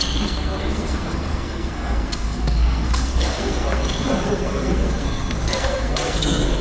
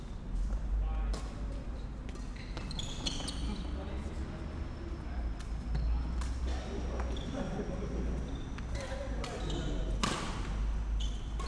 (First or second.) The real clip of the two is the second